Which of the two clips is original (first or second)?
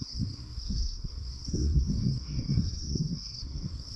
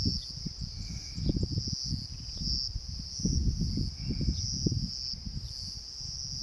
second